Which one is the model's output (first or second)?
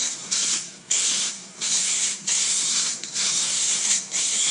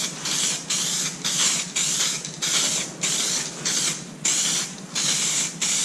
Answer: first